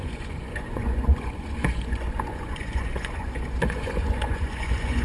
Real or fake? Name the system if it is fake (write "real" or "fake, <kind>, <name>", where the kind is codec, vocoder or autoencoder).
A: fake, vocoder, Vocos